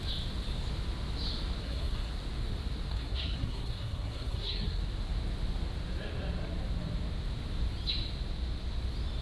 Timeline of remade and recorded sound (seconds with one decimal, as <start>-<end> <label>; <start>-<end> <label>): 0.0-1.6 recorded; 1.6-2.1 remade; 2.1-2.9 recorded; 2.9-4.8 remade; 4.8-9.2 recorded